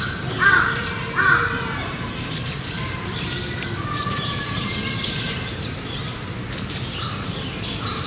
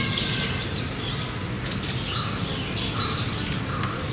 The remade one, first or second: first